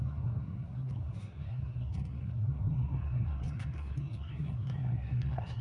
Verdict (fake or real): fake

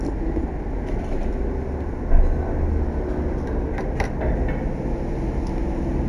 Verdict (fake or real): real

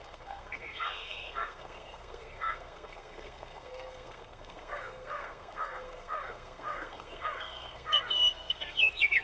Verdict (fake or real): fake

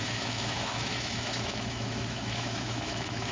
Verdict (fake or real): fake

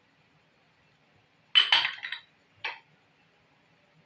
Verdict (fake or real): real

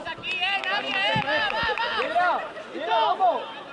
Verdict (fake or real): real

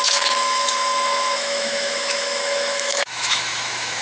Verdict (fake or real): fake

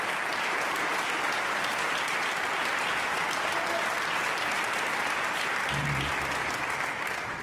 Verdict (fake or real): real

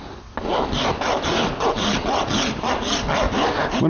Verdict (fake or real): real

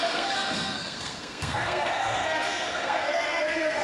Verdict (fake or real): fake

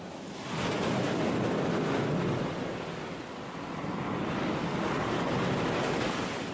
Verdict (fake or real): real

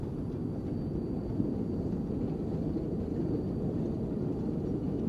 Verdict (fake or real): real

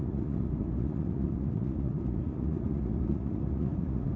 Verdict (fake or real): fake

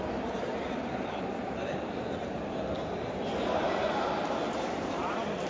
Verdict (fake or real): fake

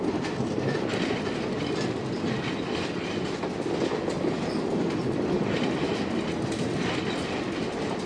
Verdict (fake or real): real